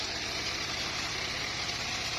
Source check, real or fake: fake